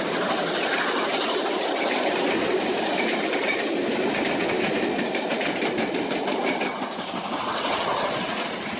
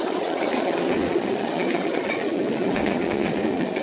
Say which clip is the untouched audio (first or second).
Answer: first